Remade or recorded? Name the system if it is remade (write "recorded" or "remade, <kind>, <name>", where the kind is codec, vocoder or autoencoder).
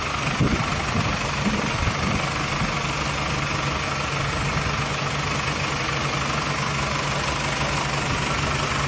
recorded